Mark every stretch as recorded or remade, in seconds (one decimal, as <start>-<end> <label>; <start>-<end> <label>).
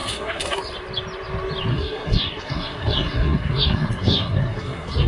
0.0-0.6 remade; 0.6-1.7 recorded; 1.7-5.1 remade